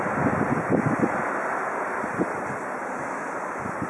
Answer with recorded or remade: recorded